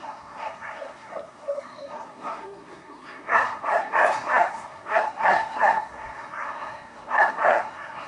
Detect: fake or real fake